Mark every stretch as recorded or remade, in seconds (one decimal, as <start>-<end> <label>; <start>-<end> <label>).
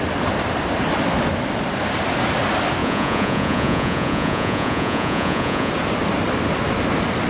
0.0-2.8 recorded; 2.8-5.7 remade; 5.7-7.3 recorded